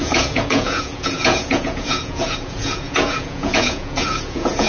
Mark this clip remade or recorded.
remade